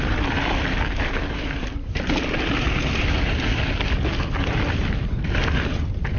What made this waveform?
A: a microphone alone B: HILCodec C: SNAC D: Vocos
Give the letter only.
A